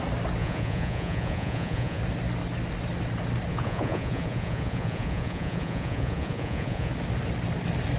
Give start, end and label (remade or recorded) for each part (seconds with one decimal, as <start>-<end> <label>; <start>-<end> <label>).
0.0-0.4 recorded; 0.4-2.0 remade; 2.0-3.5 recorded; 3.5-6.9 remade; 6.9-8.0 recorded